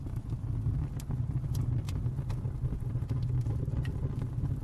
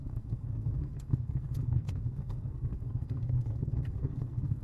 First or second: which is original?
first